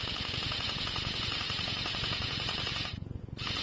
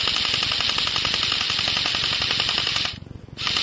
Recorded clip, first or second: second